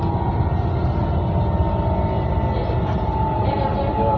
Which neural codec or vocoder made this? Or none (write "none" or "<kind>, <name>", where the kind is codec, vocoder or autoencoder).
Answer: none